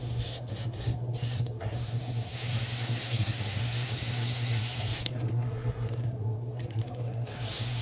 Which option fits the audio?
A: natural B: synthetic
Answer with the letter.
B